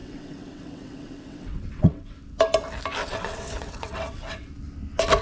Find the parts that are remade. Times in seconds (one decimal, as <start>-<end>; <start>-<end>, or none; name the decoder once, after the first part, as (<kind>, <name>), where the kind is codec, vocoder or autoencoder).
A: 0.0-2.2 (vocoder, WaveNeXt); 3.0-4.5